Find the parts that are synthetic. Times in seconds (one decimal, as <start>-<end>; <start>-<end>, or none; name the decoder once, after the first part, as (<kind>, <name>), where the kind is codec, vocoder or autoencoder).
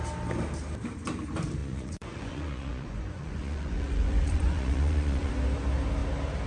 1.6-5.3 (vocoder, Vocos)